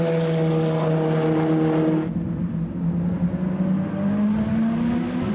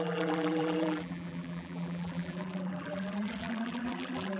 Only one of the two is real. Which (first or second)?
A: first